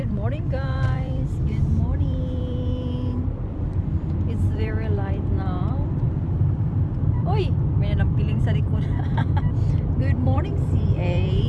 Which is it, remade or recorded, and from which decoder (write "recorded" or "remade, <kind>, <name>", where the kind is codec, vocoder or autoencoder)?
remade, vocoder, BigVGAN v2